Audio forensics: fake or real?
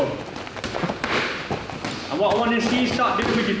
real